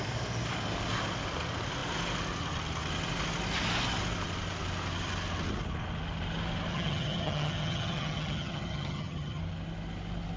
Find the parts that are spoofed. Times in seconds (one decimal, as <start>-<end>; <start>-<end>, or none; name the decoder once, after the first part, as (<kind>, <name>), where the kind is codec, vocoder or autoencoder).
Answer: 6.7-9.4 (vocoder, HiFi-GAN)